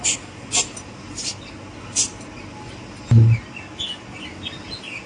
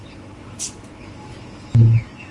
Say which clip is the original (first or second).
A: first